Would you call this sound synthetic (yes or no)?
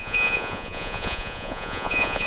yes